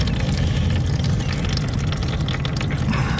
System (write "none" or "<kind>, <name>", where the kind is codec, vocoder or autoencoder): none